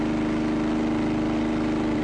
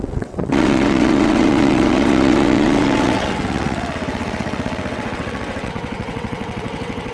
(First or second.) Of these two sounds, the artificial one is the second